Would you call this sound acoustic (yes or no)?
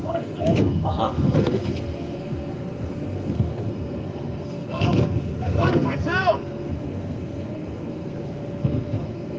no